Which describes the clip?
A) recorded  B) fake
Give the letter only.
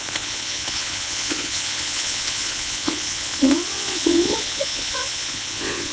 B